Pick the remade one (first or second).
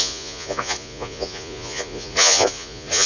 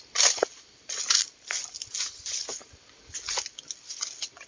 first